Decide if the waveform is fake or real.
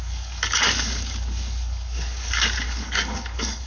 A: fake